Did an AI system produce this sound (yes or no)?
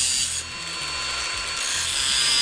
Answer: no